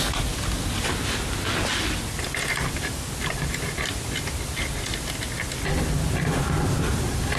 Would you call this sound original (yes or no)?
yes